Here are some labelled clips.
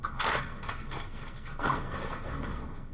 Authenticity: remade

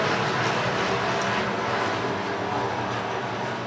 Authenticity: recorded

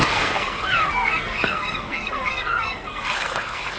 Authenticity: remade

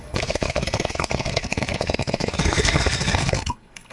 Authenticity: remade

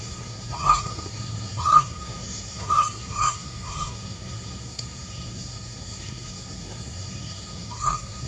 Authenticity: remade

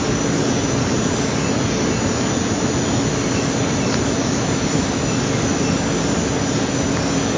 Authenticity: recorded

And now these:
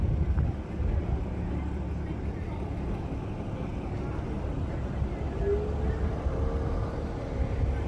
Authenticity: recorded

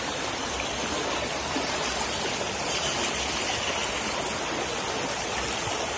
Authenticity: recorded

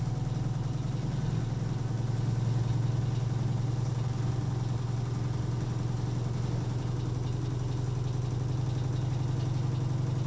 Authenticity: recorded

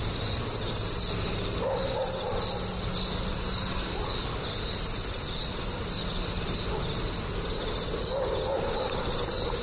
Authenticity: recorded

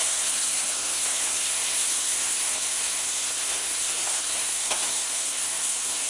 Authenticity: remade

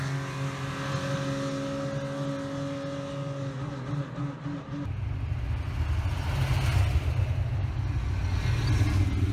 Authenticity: recorded